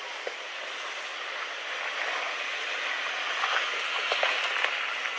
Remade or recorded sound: recorded